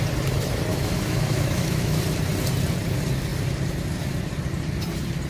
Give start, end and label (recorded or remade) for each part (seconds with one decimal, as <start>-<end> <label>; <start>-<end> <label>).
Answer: 0.0-0.7 recorded; 0.7-2.0 remade; 2.0-5.3 recorded